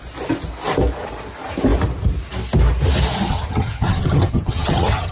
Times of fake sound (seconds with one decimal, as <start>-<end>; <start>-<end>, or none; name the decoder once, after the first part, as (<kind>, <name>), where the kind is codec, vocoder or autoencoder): 3.3-5.1 (vocoder, HiFi-GAN)